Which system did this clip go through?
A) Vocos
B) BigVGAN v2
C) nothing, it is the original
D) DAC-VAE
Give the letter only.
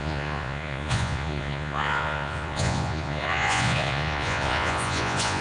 A